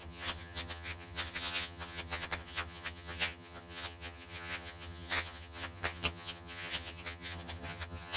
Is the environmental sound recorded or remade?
remade